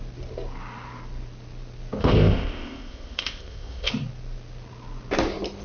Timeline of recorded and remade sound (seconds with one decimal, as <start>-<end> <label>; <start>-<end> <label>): 0.0-2.0 recorded; 2.0-3.9 remade; 3.9-5.6 recorded

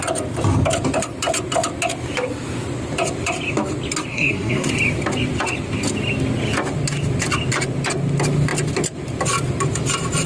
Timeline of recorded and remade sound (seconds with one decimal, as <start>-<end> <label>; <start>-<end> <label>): 0.0-4.1 recorded; 4.1-4.7 remade; 4.7-10.3 recorded

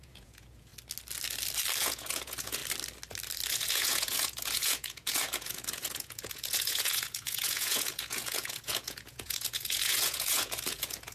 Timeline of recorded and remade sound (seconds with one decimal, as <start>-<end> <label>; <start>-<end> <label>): 0.0-0.7 remade; 0.7-1.8 recorded; 1.8-2.6 remade; 2.6-3.5 recorded; 3.5-11.1 remade

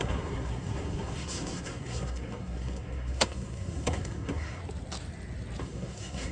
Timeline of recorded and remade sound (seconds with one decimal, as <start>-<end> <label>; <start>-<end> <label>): 0.0-4.6 remade; 4.6-5.6 recorded; 5.6-6.3 remade

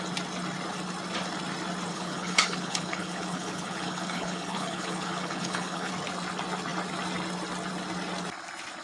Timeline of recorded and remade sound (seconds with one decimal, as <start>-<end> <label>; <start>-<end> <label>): 0.0-1.9 recorded; 1.9-5.9 remade; 5.9-8.8 recorded

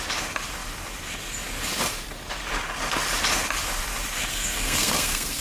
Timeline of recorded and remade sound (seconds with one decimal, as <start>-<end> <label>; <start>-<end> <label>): 0.0-4.3 recorded; 4.3-5.4 remade

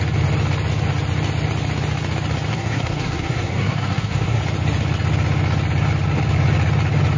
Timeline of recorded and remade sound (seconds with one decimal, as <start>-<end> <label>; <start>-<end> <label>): 0.0-2.5 recorded; 2.5-4.4 remade; 4.4-7.2 recorded